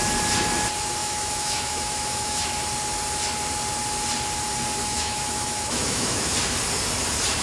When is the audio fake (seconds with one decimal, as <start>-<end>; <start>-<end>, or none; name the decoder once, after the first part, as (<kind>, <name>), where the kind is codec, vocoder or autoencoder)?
1.0-2.6 (autoencoder, DAC-VAE); 4.8-6.3

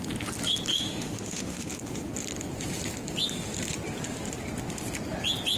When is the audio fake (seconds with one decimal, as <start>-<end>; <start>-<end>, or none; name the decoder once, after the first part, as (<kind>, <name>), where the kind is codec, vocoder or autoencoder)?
0.7-1.7 (autoencoder, DAC-VAE)

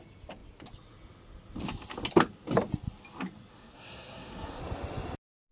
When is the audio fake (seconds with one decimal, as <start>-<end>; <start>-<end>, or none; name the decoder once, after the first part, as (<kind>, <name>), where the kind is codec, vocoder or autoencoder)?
3.5-4.6 (codec, SNAC)

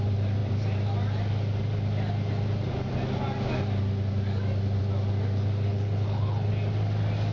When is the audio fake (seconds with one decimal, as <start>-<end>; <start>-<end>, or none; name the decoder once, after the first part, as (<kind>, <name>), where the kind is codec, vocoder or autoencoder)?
5.7-6.5 (codec, HILCodec)

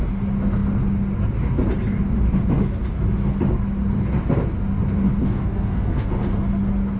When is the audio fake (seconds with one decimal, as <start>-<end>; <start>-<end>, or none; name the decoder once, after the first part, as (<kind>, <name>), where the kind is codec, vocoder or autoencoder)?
5.2-6.1 (codec, DAC)

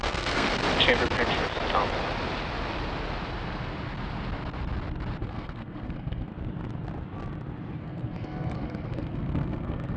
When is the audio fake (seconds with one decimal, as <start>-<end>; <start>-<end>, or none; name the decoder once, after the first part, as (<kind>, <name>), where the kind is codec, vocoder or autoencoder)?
0.0-0.6 (codec, SNAC); 5.2-6.3; 7.8-10.0

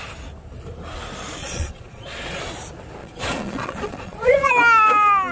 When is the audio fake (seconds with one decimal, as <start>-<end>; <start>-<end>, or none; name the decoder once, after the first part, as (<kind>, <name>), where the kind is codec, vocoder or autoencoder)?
1.4-2.4 (vocoder, Vocos); 3.0-4.5

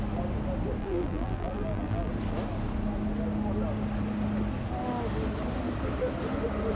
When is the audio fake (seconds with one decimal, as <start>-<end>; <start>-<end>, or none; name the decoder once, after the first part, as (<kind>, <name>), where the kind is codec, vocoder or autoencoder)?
0.8-2.1 (vocoder, BigVGAN v2)